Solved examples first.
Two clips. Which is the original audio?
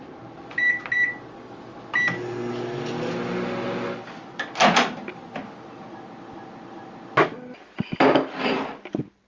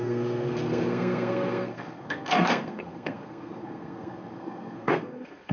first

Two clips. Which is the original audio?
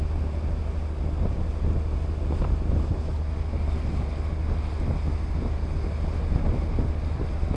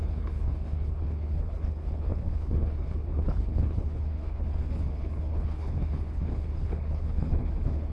first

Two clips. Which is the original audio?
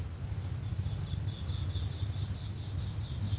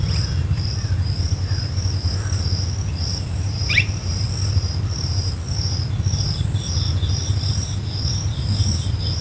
first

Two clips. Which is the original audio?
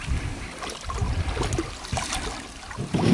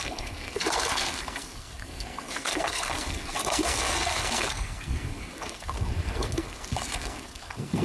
first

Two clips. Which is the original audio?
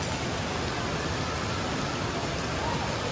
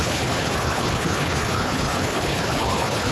first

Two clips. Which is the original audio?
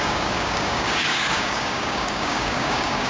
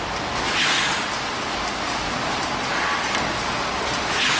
second